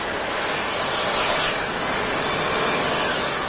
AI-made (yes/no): no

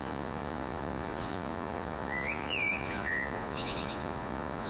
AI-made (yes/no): yes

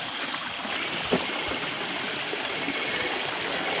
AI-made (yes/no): no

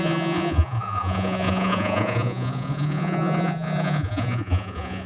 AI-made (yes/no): yes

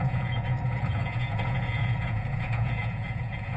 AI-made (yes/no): yes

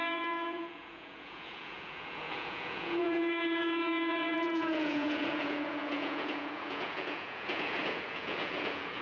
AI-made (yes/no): yes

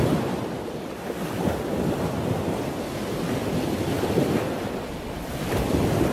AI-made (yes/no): no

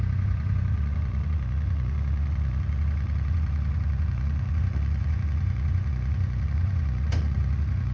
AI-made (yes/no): yes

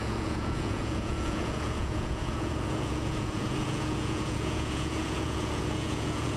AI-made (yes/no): yes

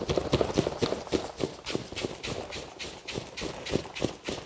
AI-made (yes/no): no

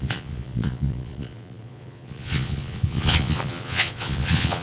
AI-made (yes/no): yes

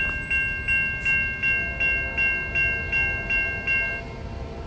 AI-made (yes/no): no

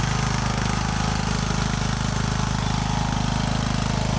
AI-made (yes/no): no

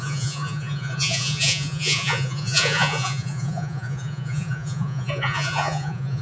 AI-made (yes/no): yes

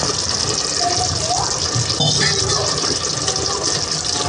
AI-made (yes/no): no